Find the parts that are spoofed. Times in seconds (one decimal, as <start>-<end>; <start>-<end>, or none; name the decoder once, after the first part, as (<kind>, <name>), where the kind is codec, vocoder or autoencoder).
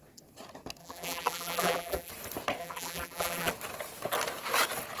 0.8-2.1 (vocoder, BigVGAN v2); 2.6-3.5